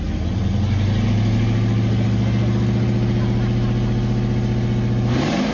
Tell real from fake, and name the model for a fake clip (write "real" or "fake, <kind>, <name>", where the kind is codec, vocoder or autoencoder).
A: real